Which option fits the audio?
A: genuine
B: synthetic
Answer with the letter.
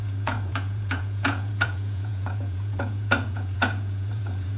B